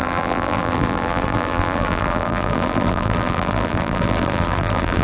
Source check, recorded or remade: remade